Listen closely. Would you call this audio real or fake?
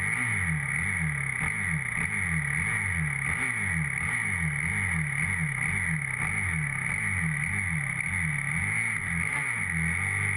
real